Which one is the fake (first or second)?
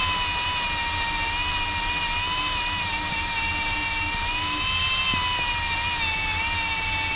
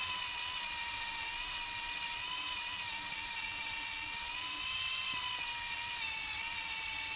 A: second